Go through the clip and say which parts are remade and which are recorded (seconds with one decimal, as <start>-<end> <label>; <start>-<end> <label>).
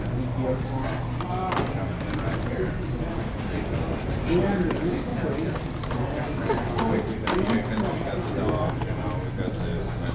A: 0.0-10.1 recorded